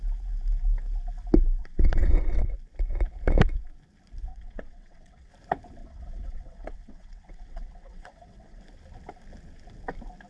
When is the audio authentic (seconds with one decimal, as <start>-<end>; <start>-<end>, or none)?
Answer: 0.0-1.6; 2.5-4.3; 5.3-5.8; 8.6-10.3